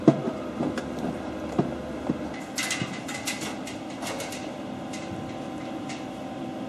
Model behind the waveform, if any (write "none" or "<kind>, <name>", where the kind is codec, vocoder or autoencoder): none